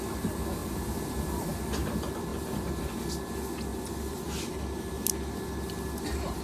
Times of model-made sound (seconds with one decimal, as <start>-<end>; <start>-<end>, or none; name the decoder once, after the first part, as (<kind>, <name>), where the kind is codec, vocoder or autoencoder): 0.6-1.5 (vocoder, BigVGAN v2); 2.3-3.0; 3.7-5.0